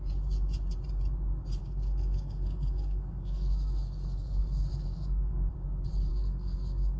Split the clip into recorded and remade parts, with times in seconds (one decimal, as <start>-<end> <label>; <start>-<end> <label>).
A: 0.0-1.6 recorded; 1.6-5.5 remade; 5.5-6.1 recorded; 6.1-7.0 remade